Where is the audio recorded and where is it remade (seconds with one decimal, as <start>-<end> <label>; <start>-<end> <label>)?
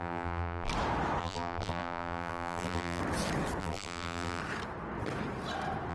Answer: 0.0-0.7 remade; 0.7-1.2 recorded; 1.2-3.0 remade; 3.0-3.6 recorded; 3.6-4.4 remade; 4.4-5.9 recorded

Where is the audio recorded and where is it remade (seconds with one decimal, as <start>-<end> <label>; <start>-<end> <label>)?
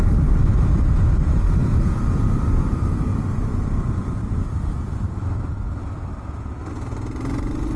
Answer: 0.0-0.5 recorded; 0.5-2.6 remade; 2.6-7.8 recorded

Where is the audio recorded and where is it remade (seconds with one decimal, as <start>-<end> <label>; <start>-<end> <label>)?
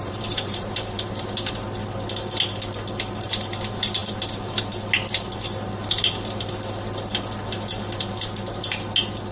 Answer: 0.0-1.5 remade; 1.5-9.3 recorded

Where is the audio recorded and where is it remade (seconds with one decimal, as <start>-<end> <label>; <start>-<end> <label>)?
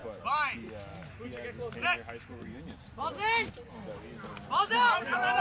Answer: 0.0-2.4 recorded; 2.4-3.0 remade; 3.0-5.4 recorded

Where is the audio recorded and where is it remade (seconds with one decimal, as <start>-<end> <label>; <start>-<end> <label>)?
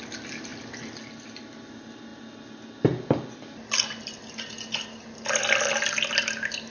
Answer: 0.0-6.7 recorded